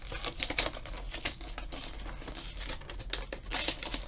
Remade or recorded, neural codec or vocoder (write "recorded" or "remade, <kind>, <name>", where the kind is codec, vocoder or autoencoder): recorded